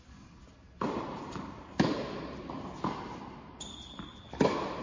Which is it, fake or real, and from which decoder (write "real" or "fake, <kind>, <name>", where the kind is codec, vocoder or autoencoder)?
real